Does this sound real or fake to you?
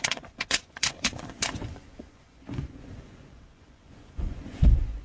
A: fake